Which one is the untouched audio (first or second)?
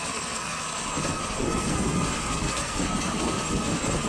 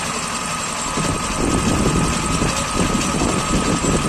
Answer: second